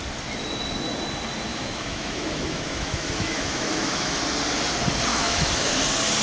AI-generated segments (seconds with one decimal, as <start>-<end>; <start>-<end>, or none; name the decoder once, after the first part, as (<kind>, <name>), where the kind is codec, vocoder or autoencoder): 1.5-4.2 (autoencoder, DAC-VAE); 5.1-5.7